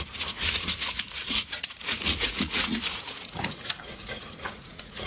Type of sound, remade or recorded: remade